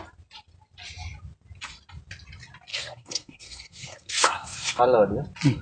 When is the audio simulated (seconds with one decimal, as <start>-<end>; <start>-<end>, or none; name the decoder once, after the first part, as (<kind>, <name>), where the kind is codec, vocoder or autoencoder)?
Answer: 2.7-4.8 (codec, SNAC)